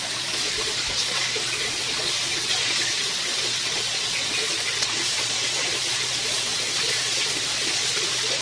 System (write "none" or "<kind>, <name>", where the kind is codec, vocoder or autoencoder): vocoder, Vocos